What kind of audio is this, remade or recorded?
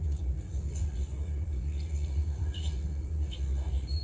remade